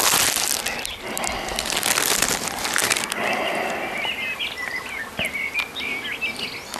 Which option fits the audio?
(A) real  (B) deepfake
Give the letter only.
A